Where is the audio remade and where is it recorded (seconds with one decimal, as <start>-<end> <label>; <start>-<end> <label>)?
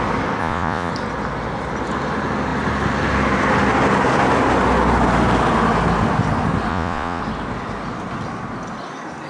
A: 0.0-0.4 recorded; 0.4-0.9 remade; 0.9-6.7 recorded; 6.7-7.2 remade; 7.2-9.3 recorded